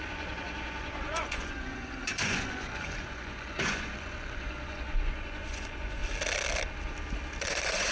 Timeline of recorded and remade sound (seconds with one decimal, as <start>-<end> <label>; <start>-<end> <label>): 0.0-6.0 remade; 6.0-7.5 recorded; 7.5-7.9 remade